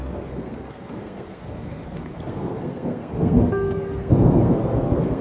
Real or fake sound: fake